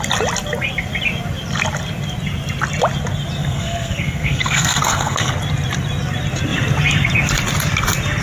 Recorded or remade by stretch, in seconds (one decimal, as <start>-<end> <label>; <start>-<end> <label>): 0.0-3.4 recorded; 3.4-5.3 remade; 5.3-8.2 recorded